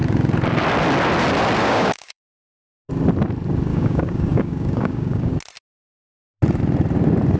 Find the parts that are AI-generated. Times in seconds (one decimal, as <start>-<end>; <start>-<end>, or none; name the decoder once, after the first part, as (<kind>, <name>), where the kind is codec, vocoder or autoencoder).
1.6-2.7 (codec, DAC); 3.7-5.3